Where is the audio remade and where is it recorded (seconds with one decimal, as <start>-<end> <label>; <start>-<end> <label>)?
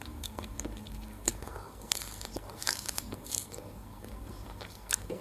0.0-5.2 remade